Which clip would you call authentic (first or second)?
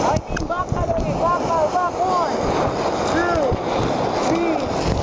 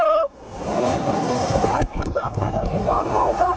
first